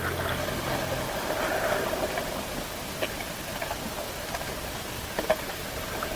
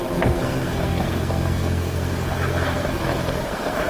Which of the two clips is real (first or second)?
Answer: first